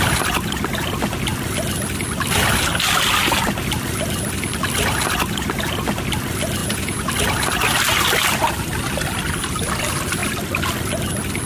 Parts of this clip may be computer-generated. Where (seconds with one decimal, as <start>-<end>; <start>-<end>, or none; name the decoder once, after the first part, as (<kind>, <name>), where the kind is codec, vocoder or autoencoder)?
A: 6.6-7.1 (vocoder, Vocos)